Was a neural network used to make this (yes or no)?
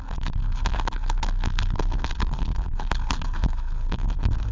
yes